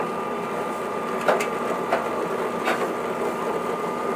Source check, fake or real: real